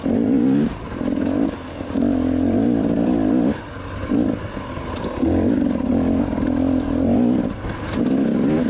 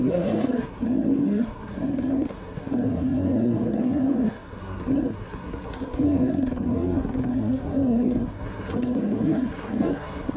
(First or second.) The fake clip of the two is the second